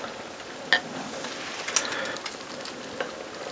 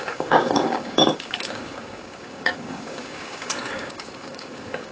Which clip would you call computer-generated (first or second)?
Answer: second